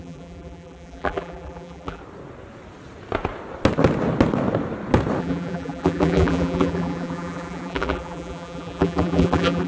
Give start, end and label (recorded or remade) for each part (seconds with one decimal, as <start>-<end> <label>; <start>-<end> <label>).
0.0-2.0 remade; 2.0-5.2 recorded; 5.2-9.7 remade